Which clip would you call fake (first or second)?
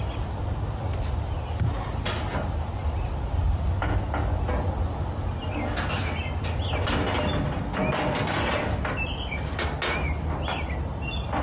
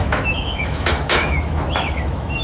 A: second